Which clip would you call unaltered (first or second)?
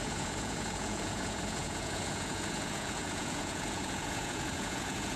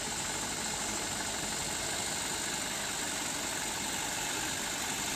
second